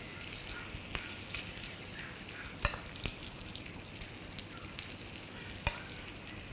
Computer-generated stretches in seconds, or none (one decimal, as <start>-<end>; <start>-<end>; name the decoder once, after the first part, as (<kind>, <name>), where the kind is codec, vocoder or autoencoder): none